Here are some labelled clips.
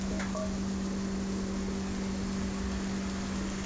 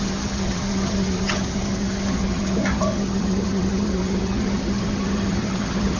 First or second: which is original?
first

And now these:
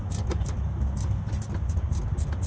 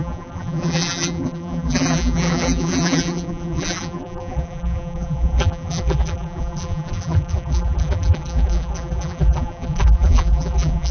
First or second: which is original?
first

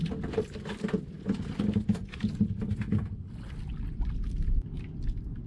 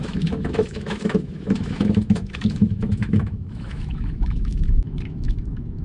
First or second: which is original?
first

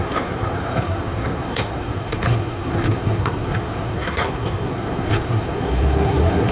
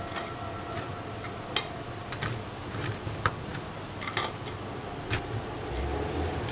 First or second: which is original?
second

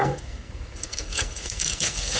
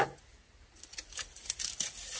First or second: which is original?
second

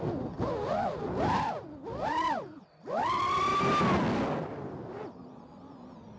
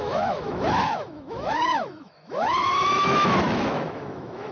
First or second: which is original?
first